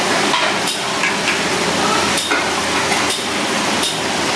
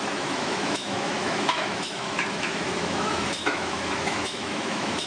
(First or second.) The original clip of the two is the first